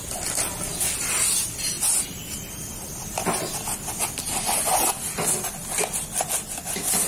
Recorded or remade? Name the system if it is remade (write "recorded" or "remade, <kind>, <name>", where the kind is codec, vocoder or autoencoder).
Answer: recorded